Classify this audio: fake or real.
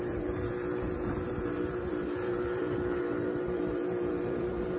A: fake